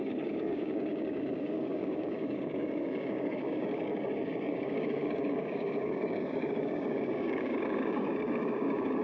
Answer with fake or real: fake